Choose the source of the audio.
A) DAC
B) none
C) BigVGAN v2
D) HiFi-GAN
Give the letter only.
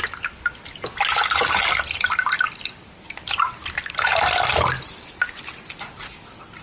B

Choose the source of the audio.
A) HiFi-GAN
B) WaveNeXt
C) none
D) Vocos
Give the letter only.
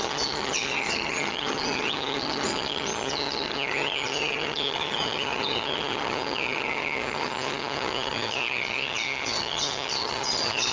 A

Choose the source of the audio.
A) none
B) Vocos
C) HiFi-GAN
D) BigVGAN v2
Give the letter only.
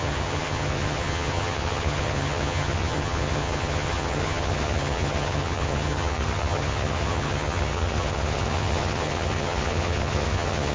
C